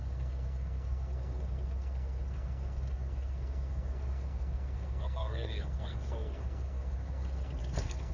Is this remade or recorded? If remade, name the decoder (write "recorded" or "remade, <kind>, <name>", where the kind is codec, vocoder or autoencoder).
remade, codec, SNAC